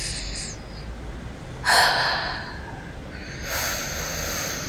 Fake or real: real